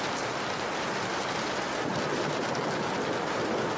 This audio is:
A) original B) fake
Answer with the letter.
A